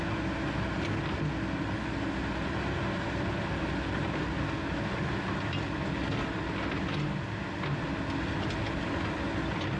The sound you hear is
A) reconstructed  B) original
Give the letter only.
B